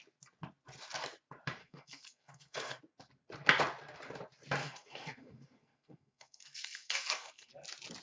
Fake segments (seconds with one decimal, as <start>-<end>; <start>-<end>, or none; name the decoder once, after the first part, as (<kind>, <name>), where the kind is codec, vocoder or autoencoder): 1.6-2.8 (codec, SNAC); 4.6-7.5

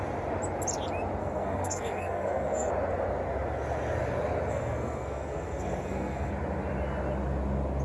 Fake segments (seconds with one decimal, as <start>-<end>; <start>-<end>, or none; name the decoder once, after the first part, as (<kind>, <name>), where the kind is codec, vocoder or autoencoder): 1.2-2.7 (codec, SNAC); 4.5-6.3

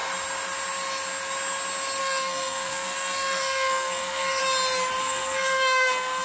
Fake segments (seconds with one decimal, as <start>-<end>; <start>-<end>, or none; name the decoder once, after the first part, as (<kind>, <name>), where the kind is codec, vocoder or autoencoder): 2.0-4.4 (codec, SNAC); 5.0-6.2

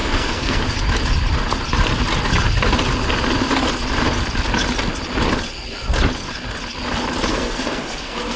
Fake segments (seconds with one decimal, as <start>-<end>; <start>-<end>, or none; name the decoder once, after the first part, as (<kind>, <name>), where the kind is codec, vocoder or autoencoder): 0.0-0.6 (codec, SNAC); 7.3-8.4

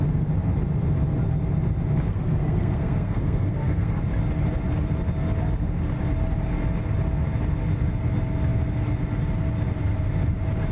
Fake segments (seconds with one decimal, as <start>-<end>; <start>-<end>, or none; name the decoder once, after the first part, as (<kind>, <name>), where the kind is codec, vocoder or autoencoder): 2.1-4.0 (codec, SNAC)

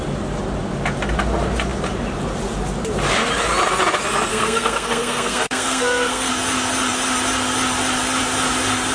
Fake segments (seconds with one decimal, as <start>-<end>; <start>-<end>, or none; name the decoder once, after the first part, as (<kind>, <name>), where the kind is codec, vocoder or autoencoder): 4.3-6.3 (codec, SNAC)